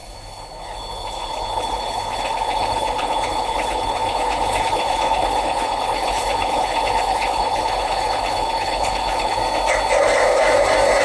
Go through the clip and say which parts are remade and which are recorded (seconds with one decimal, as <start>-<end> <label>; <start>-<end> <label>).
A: 0.0-9.4 remade; 9.4-11.0 recorded